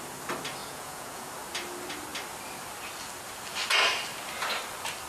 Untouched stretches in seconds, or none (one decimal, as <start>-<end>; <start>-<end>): 0.0-0.6; 1.3-5.1